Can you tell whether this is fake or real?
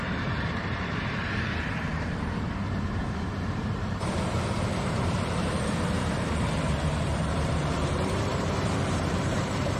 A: fake